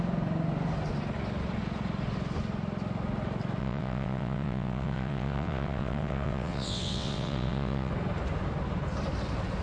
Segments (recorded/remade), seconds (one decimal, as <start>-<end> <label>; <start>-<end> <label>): 0.0-3.6 recorded; 3.6-7.9 remade; 7.9-9.6 recorded